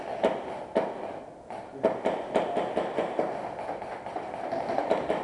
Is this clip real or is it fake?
real